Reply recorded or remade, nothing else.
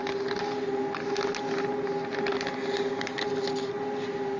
recorded